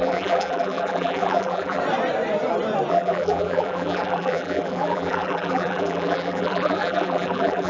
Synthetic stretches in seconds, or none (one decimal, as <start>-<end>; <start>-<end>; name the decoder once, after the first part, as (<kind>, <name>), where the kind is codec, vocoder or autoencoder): 0.0-1.8 (vocoder, BigVGAN v2); 2.9-7.7